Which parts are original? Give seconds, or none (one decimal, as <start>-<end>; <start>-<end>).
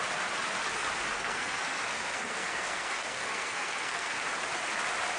0.0-1.1; 4.2-5.2